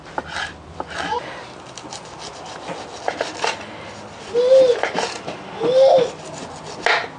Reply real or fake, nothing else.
real